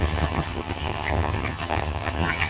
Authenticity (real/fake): fake